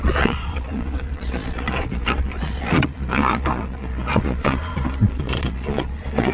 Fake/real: fake